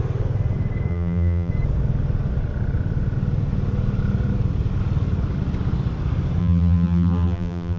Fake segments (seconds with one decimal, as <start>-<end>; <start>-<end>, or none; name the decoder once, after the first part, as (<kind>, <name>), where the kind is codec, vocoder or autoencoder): 0.9-1.5 (vocoder, BigVGAN v2); 6.4-7.8